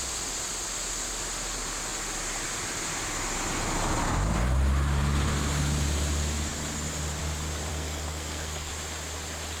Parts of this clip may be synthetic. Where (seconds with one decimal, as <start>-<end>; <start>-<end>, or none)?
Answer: 7.7-8.7